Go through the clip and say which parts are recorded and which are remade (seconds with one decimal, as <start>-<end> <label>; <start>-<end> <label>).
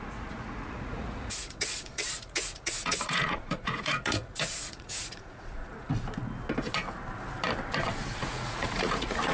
0.0-5.9 remade; 5.9-8.2 recorded; 8.2-9.3 remade